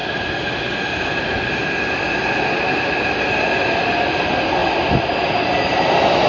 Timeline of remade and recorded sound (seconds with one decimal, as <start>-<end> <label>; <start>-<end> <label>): 0.0-6.3 recorded